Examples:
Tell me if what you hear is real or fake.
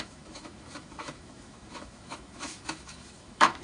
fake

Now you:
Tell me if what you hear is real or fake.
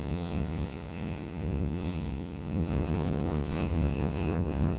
fake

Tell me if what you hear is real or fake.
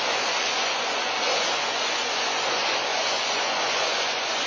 fake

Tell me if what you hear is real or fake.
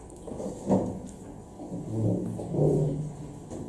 fake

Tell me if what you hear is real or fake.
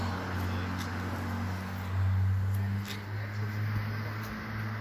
real